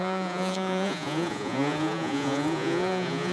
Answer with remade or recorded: remade